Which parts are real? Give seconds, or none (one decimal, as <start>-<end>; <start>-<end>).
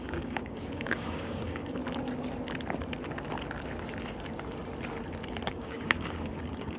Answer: 1.8-5.5